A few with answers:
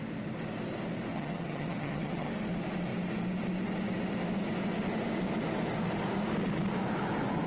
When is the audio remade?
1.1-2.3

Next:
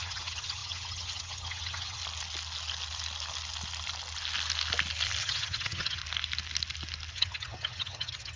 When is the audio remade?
0.0-2.0; 5.2-6.0; 7.1-8.4

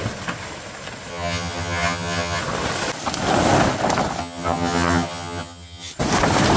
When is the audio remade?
1.1-2.4; 4.2-5.9

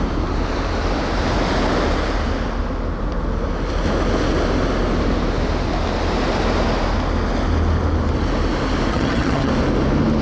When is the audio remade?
8.9-9.5

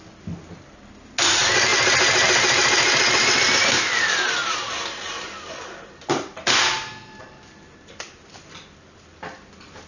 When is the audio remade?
none

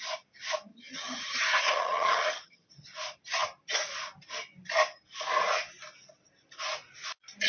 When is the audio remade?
0.7-2.7

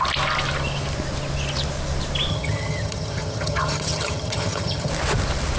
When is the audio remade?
2.3-4.9

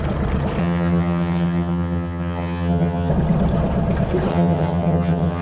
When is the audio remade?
0.6-3.1; 4.3-5.4